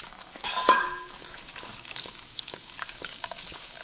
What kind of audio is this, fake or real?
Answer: fake